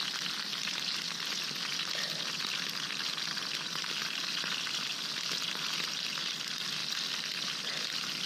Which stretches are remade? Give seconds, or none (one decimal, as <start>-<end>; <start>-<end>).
none